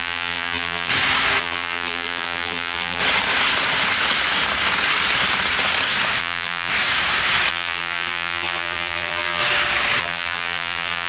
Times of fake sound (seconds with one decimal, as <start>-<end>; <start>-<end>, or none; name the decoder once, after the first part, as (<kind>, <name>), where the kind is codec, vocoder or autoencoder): 0.0-0.9 (vocoder, BigVGAN v2); 1.4-3.0; 6.2-6.7; 7.5-9.4; 10.0-11.1